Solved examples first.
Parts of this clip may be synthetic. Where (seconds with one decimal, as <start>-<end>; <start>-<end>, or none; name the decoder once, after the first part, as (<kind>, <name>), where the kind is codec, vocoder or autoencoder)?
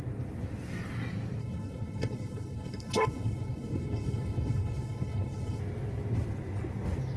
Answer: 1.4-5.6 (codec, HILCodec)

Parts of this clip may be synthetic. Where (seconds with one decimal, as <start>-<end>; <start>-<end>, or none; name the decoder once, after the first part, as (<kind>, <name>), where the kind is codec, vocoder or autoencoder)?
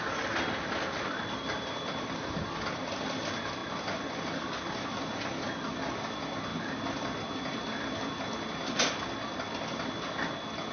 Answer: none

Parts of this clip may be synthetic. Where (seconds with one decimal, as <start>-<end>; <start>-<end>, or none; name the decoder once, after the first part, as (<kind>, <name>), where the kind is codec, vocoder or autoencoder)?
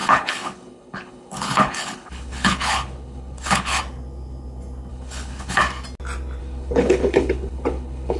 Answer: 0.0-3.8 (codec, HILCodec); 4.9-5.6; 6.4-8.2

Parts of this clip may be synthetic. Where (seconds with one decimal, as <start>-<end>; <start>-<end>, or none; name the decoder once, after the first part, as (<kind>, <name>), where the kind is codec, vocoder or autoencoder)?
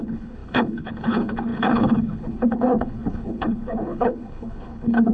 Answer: 0.0-5.1 (codec, HILCodec)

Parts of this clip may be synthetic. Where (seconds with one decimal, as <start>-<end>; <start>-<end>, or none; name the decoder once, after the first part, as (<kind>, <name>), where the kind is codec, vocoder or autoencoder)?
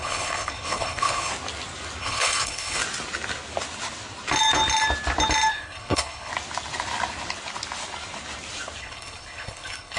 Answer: 0.0-1.3 (codec, HILCodec); 2.0-2.8; 5.5-6.3; 8.8-10.0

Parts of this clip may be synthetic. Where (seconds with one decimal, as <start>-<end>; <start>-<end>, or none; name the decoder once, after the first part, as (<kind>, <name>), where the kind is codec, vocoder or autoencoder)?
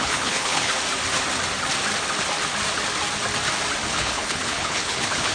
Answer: 0.0-0.7 (codec, HILCodec); 3.9-5.3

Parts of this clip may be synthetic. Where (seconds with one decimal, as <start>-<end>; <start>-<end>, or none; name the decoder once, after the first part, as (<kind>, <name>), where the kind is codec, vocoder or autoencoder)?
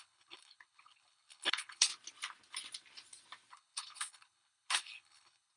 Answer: 0.0-1.9 (codec, HILCodec); 3.5-5.6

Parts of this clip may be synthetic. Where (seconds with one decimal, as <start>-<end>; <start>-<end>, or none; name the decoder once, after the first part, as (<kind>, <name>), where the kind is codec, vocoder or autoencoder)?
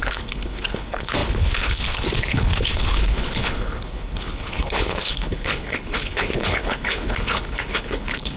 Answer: 0.0-8.4 (codec, HILCodec)